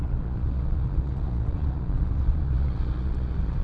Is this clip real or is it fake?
fake